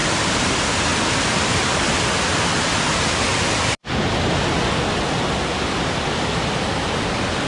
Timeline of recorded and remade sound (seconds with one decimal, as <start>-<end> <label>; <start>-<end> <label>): 0.0-0.5 remade; 0.5-7.5 recorded